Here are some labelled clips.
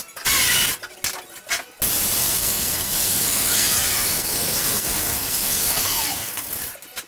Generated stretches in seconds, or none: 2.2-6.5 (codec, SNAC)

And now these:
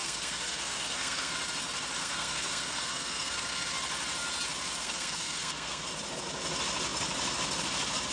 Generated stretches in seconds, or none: 0.0-1.3 (codec, SNAC); 2.0-3.7; 4.8-5.8

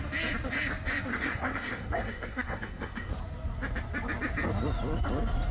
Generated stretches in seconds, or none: 1.1-3.1 (codec, SNAC)

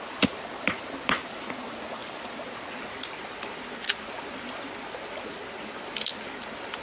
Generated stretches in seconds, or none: none